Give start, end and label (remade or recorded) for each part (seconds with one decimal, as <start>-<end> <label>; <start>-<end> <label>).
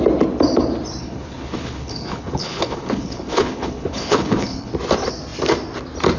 0.0-1.0 recorded; 1.0-4.7 remade; 4.7-6.2 recorded